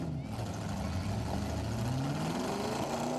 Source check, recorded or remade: recorded